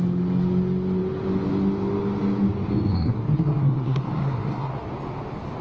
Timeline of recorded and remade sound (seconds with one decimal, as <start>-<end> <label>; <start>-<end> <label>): 0.0-2.9 recorded; 2.9-4.9 remade; 4.9-5.6 recorded